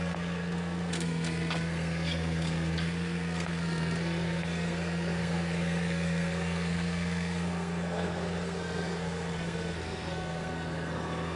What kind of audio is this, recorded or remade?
remade